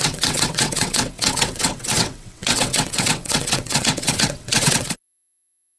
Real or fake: fake